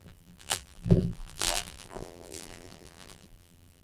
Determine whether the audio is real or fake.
fake